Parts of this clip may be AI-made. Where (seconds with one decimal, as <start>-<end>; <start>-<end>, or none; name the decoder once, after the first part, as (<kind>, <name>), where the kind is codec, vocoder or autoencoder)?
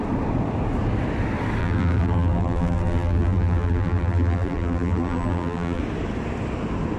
1.6-5.8 (vocoder, BigVGAN v2)